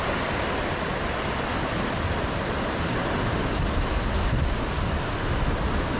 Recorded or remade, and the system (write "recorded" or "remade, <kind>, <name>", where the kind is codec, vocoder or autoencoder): recorded